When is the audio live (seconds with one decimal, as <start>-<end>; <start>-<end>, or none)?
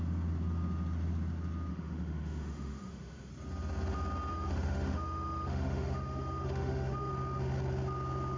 0.0-1.7; 3.3-4.3; 7.1-8.4